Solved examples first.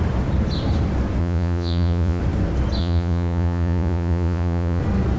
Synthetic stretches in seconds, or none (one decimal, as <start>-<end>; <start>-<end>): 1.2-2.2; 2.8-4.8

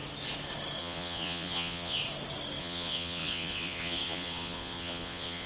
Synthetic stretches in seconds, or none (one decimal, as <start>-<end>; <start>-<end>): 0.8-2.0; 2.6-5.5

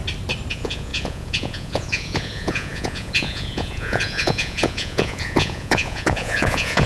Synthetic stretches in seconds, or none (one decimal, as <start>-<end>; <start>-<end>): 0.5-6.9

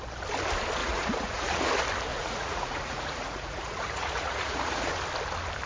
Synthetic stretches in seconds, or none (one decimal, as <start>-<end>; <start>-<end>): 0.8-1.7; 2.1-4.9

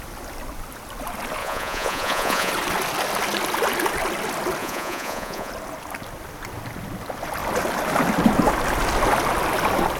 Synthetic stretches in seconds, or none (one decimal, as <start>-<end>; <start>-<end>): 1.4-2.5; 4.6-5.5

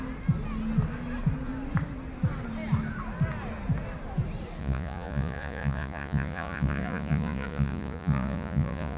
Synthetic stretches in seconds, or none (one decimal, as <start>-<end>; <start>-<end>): 4.6-9.0

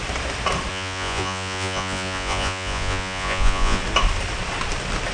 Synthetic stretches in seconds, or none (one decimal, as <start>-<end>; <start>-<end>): 0.7-3.8

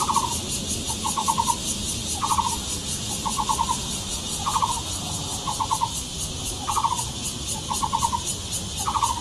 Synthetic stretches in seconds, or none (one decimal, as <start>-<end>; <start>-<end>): 2.0-5.2